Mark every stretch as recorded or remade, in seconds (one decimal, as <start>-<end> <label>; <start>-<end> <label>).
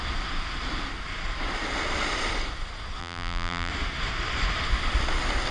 0.0-3.0 recorded; 3.0-3.7 remade; 3.7-5.5 recorded